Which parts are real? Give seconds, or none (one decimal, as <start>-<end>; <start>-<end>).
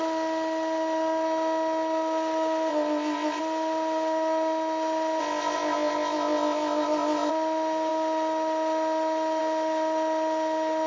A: 0.0-2.7; 3.4-5.2; 7.3-10.9